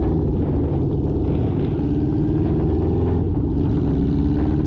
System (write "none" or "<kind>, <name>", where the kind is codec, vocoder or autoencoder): none